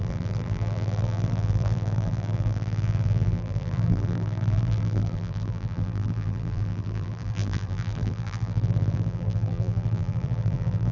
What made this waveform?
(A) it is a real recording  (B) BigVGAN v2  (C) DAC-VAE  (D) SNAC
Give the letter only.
B